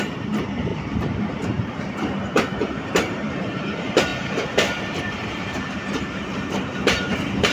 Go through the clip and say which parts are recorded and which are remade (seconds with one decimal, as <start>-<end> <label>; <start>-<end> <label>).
0.0-4.1 remade; 4.1-5.0 recorded; 5.0-7.5 remade